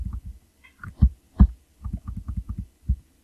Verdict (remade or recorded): recorded